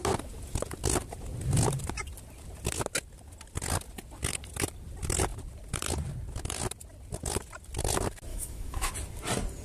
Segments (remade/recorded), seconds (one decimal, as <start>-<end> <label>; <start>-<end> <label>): 0.0-8.3 recorded; 8.3-8.9 remade; 8.9-9.6 recorded